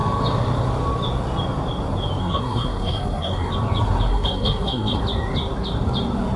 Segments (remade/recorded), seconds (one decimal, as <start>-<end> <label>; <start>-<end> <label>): 0.0-2.2 recorded; 2.2-3.5 remade; 3.5-4.1 recorded; 4.1-5.0 remade; 5.0-6.4 recorded